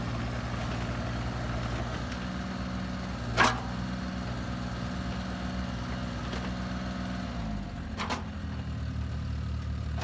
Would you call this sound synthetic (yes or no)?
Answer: no